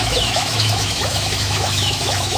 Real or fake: fake